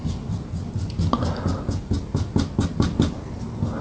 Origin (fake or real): real